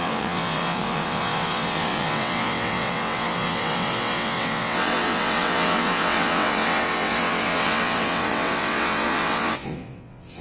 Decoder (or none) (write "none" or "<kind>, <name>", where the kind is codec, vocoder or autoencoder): vocoder, WaveNeXt